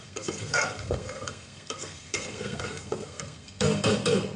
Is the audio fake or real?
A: fake